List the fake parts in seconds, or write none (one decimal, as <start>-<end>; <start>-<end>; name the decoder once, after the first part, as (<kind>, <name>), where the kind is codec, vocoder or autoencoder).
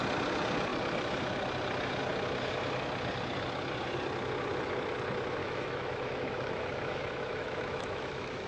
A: 5.4-8.5 (autoencoder, DAC-VAE)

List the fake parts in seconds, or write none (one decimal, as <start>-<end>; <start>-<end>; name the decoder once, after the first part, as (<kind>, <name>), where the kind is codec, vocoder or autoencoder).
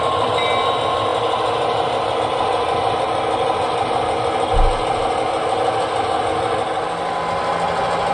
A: none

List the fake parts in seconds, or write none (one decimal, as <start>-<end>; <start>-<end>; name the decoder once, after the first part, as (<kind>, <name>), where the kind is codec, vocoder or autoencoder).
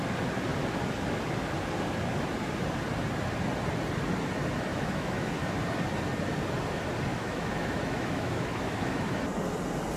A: 4.7-5.3 (autoencoder, DAC-VAE); 7.1-9.2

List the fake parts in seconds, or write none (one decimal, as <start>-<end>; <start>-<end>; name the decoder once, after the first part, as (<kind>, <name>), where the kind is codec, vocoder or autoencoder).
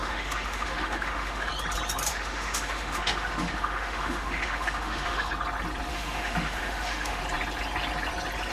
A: 0.0-1.5 (autoencoder, DAC-VAE); 2.1-5.3; 5.9-7.2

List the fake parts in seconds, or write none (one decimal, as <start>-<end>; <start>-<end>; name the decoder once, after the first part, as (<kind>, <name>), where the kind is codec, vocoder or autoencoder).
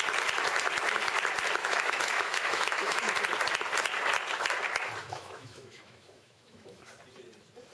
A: 1.6-3.1 (autoencoder, DAC-VAE); 5.0-6.9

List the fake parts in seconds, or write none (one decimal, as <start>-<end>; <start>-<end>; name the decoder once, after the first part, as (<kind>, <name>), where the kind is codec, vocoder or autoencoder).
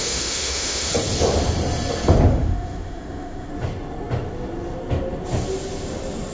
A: 0.0-0.9 (autoencoder, DAC-VAE); 2.3-3.5